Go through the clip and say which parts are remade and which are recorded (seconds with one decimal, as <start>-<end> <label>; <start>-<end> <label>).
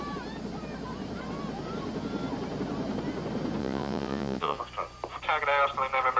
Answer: 0.0-3.6 recorded; 3.6-4.6 remade; 4.6-6.2 recorded